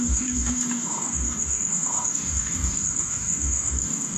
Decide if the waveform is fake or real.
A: fake